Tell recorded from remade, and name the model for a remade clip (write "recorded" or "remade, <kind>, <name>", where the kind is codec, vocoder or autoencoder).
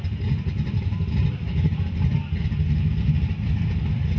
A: remade, vocoder, BigVGAN v2